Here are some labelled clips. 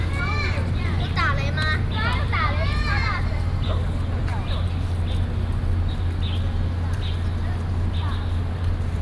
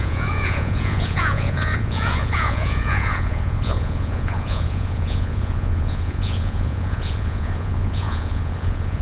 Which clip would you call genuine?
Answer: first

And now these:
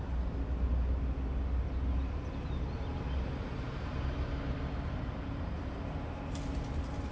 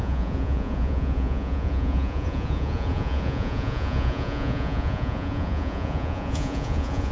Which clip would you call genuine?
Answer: first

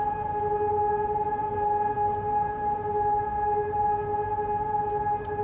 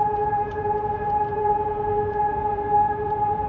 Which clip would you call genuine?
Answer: first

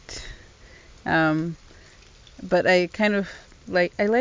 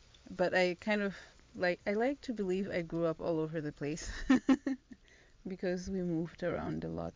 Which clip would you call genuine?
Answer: first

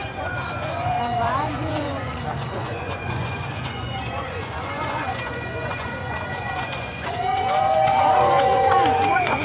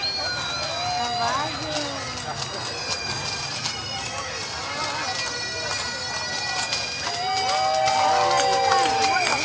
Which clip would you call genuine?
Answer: second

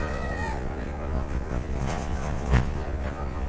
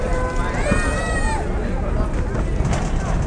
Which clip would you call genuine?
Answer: second